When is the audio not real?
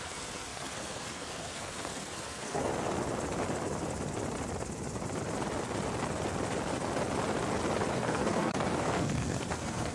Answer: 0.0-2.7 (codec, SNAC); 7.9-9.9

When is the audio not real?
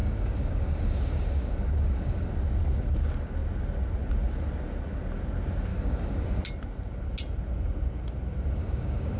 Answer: 0.0-2.3 (codec, DAC); 5.7-6.4; 8.6-9.2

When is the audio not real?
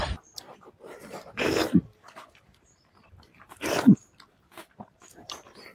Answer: 0.0-5.7 (vocoder, BigVGAN v2)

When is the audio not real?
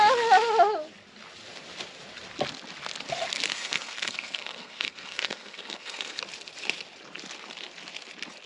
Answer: 3.5-6.2 (codec, SNAC)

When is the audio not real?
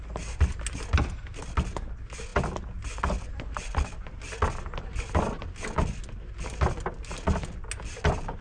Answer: none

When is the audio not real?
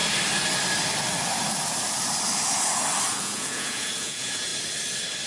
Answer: 3.2-4.5 (vocoder, Vocos)